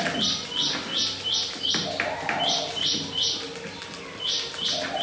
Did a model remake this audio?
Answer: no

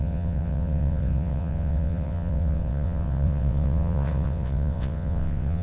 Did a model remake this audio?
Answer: yes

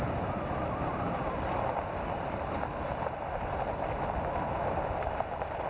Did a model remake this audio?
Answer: no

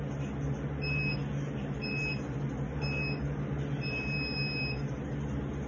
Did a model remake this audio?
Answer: no